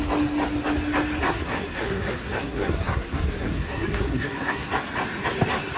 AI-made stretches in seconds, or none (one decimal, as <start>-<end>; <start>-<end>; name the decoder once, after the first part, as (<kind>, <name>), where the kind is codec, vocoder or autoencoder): 1.2-4.7 (codec, SNAC)